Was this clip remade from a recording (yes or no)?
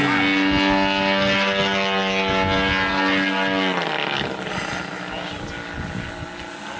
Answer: no